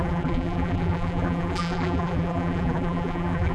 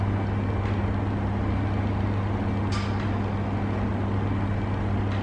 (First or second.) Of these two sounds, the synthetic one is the first